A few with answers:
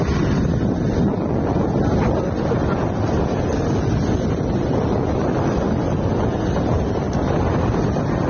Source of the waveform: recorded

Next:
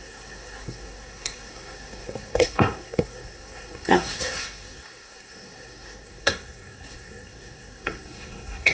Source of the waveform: remade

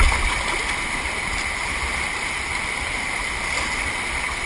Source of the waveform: recorded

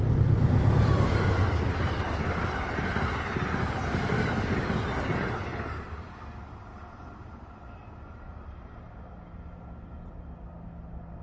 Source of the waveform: recorded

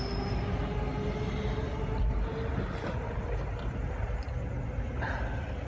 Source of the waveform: recorded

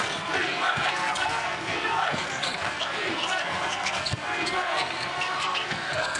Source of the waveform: remade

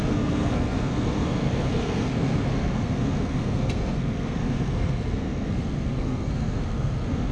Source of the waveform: remade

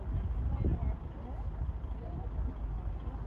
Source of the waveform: recorded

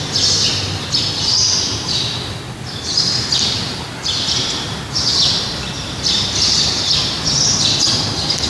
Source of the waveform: recorded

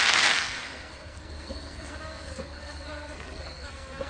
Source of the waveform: remade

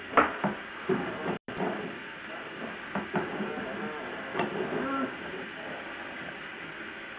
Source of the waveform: recorded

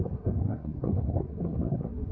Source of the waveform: remade